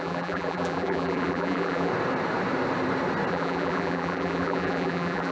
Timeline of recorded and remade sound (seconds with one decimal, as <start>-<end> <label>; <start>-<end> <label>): 0.0-1.9 remade; 1.9-3.3 recorded; 3.3-5.3 remade